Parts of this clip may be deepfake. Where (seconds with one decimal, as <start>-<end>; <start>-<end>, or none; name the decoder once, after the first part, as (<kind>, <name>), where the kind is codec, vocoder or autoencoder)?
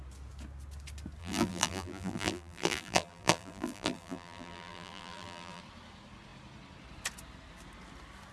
1.2-5.6 (vocoder, BigVGAN v2)